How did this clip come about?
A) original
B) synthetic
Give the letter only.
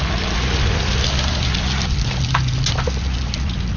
A